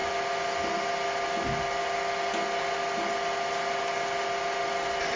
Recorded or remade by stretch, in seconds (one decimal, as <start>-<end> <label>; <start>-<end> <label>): 0.0-5.2 recorded